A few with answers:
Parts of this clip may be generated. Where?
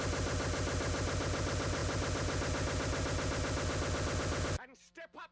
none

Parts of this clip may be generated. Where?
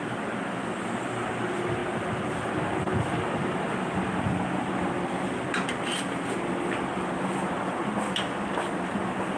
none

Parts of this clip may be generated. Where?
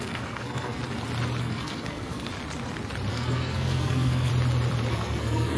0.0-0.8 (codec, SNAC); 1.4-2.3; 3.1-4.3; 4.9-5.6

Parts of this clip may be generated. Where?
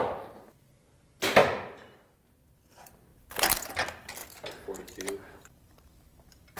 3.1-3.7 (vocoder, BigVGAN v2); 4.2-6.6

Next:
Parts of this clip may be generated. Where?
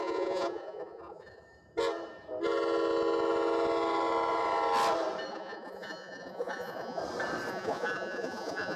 0.0-1.4 (vocoder, Vocos); 5.3-7.0; 7.5-8.8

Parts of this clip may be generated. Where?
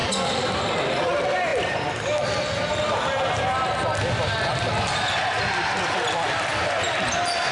none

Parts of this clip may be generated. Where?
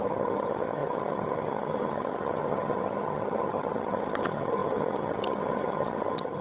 0.0-6.4 (vocoder, HiFi-GAN)